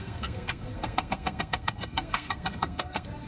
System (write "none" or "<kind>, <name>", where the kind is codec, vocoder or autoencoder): codec, SNAC